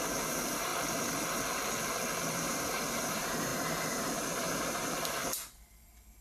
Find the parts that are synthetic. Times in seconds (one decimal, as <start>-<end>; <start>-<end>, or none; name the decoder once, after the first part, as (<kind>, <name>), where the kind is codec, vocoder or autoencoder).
0.0-0.7 (vocoder, BigVGAN v2); 2.3-5.2